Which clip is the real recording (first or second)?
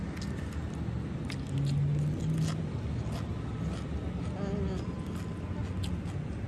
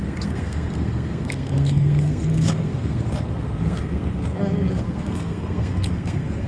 first